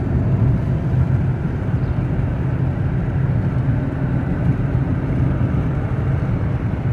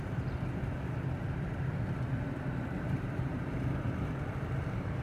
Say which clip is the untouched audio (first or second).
first